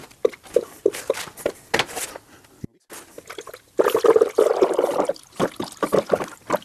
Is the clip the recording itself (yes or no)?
yes